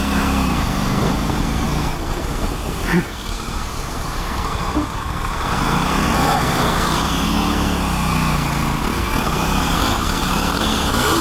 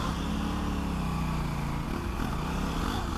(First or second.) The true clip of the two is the second